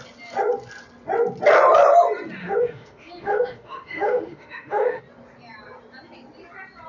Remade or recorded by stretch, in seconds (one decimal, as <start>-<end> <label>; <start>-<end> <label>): 0.0-2.4 recorded; 2.4-5.0 remade; 5.0-6.9 recorded